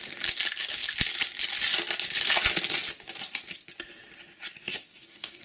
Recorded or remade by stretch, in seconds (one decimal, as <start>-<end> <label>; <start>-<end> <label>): 0.0-4.6 recorded; 4.6-5.4 remade